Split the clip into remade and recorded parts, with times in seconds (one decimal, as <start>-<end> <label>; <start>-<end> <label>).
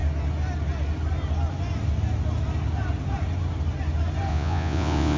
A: 0.0-4.3 recorded; 4.3-5.2 remade